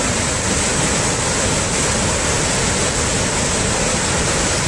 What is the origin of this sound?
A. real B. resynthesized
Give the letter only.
A